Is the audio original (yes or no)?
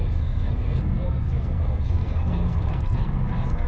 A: no